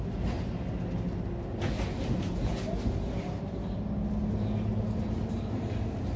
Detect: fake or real real